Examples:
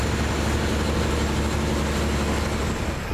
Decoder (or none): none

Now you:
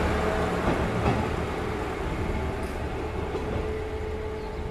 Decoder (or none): none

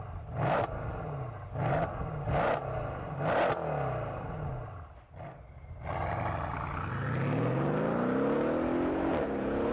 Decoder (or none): none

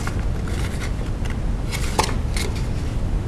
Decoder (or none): none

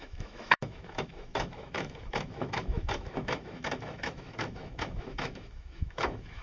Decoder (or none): autoencoder, DAC-VAE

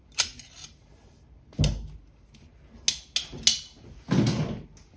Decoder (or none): none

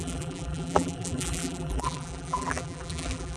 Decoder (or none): vocoder, BigVGAN v2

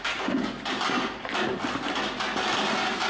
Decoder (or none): vocoder, BigVGAN v2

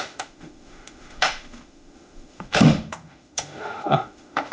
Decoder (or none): autoencoder, DAC-VAE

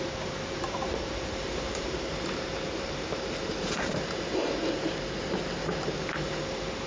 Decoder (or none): vocoder, BigVGAN v2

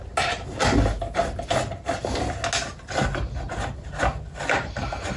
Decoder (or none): none